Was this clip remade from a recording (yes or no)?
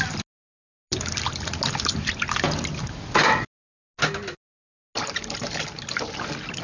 no